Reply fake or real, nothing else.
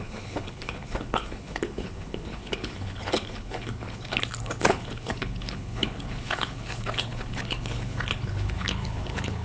fake